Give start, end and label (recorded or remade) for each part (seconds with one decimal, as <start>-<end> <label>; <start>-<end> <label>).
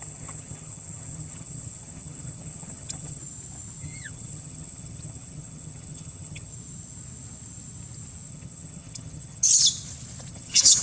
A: 0.0-3.2 remade; 3.2-3.8 recorded; 3.8-6.5 remade; 6.5-8.3 recorded; 8.3-9.5 remade; 9.5-10.3 recorded; 10.3-10.8 remade